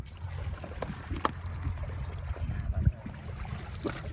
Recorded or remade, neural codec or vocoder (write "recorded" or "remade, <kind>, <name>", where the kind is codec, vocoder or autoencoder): recorded